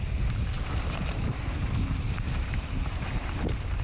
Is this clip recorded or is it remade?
remade